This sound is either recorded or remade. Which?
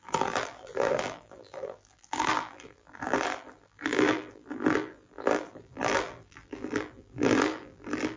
remade